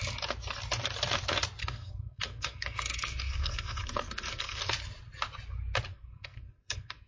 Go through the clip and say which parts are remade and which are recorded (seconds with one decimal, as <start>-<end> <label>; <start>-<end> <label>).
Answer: 0.0-1.6 recorded; 1.6-4.6 remade; 4.6-5.9 recorded; 5.9-7.1 remade